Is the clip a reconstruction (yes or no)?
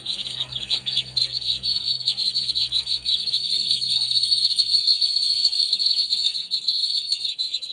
yes